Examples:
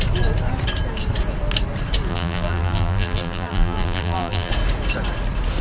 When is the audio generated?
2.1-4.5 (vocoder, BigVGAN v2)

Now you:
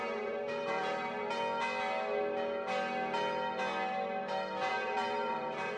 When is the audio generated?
0.0-1.2 (vocoder, BigVGAN v2); 4.7-5.8

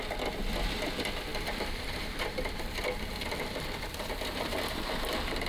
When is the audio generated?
1.3-3.6 (vocoder, BigVGAN v2); 4.5-5.5

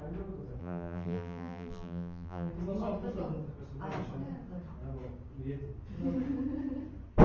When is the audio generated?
0.6-2.5 (vocoder, BigVGAN v2)

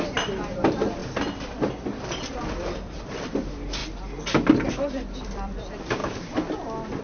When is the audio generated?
0.0-1.0 (vocoder, BigVGAN v2); 2.2-3.8; 4.7-6.0

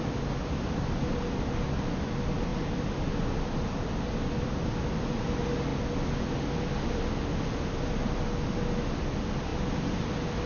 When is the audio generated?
2.5-3.1 (vocoder, BigVGAN v2); 9.5-10.1

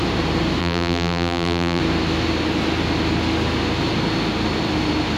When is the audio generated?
0.6-1.8 (vocoder, BigVGAN v2)

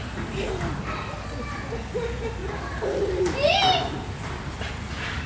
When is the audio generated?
0.0-0.8 (vocoder, BigVGAN v2); 2.4-4.7